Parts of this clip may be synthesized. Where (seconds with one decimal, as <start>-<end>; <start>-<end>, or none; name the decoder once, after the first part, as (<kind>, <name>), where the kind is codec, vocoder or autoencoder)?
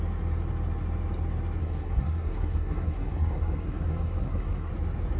1.6-4.7 (codec, SNAC)